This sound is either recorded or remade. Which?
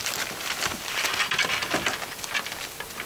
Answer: recorded